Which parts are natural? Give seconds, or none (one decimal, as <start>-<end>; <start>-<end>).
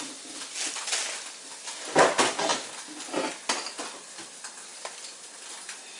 0.0-6.0